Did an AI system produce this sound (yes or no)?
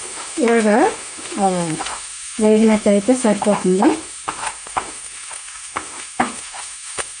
yes